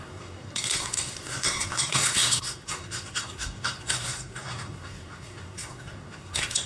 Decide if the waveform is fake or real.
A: fake